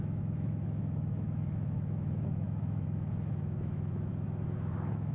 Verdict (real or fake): fake